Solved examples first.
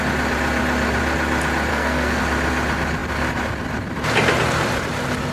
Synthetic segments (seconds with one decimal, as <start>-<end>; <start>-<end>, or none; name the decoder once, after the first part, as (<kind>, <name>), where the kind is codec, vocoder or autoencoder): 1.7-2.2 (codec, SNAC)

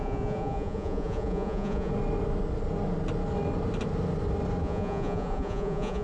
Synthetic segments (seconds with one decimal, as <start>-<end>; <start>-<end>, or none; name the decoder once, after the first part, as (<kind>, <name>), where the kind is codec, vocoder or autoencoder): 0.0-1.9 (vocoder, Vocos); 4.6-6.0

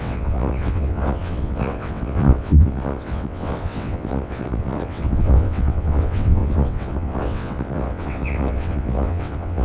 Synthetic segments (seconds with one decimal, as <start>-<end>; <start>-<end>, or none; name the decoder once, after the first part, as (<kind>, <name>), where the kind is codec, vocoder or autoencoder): 0.0-9.6 (vocoder, WaveNeXt)

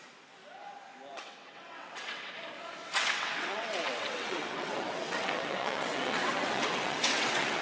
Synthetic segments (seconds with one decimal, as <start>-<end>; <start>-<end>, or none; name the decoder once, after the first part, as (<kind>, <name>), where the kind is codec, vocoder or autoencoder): 1.1-2.3 (vocoder, WaveNeXt); 2.8-7.6